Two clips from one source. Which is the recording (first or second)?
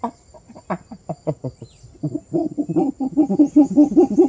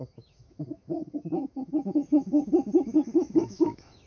first